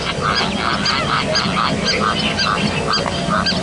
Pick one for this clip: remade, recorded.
recorded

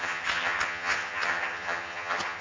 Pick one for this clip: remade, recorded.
remade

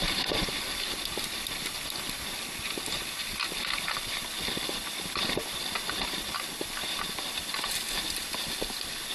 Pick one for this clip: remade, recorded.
recorded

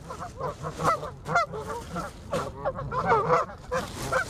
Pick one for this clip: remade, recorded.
recorded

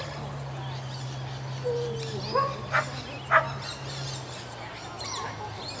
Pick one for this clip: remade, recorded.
recorded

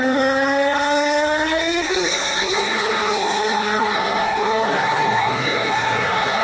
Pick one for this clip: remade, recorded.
remade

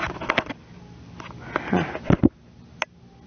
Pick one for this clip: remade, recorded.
recorded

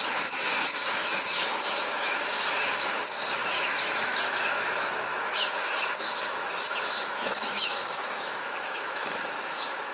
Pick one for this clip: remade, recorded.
remade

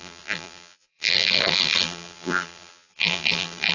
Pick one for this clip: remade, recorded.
remade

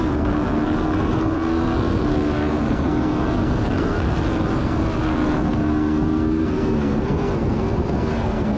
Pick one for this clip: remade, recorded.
remade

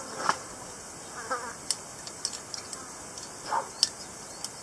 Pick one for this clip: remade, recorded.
recorded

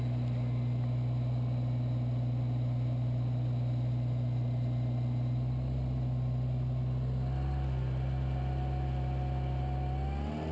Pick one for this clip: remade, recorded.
recorded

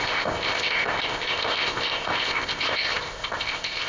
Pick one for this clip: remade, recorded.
remade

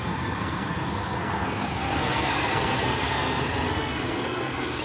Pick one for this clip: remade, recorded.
remade